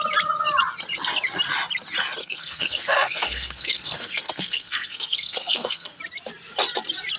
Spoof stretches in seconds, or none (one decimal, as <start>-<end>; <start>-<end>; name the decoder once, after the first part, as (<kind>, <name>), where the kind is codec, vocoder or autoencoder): 2.2-6.0 (codec, SNAC)